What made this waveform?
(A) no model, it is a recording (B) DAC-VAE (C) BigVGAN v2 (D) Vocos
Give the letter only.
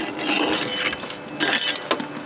A